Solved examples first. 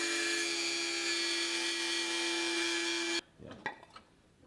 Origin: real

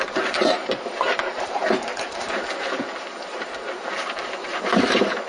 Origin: fake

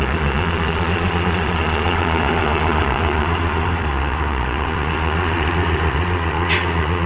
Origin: fake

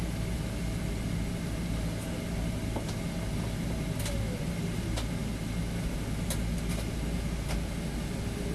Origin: real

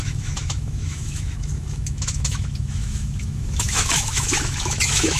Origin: fake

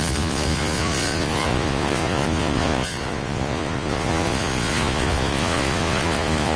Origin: fake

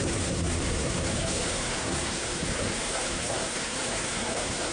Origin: fake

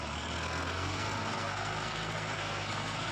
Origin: fake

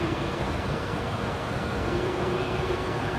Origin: fake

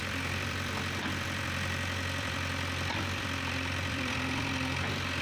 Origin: fake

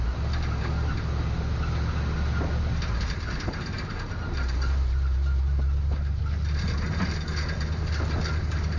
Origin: real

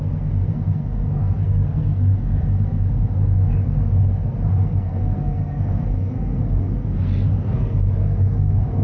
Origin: fake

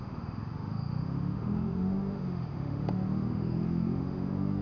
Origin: fake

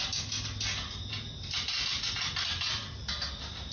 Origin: real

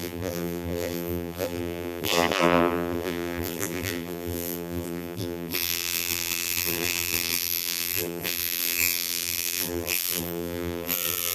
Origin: fake